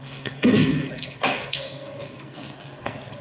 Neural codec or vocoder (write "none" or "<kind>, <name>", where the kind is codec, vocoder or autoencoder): codec, SNAC